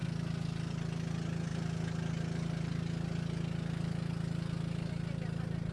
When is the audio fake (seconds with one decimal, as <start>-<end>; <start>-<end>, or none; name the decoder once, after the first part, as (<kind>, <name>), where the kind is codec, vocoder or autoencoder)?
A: none